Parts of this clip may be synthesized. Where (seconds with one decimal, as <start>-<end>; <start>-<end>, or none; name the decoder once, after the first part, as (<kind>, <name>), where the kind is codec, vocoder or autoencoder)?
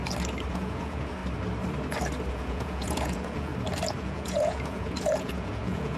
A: 0.5-1.2 (vocoder, Vocos); 2.3-3.5; 4.0-6.0